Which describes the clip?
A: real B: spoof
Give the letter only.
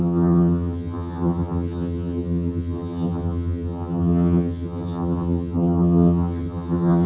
B